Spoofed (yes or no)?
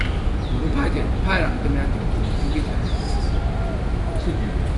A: no